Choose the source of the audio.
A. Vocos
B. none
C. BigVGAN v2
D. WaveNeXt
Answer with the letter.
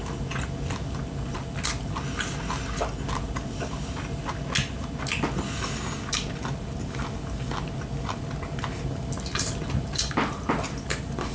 B